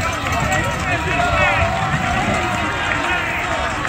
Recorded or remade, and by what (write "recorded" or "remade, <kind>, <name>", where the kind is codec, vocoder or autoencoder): recorded